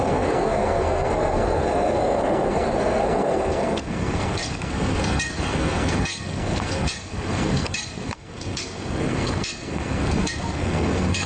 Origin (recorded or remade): remade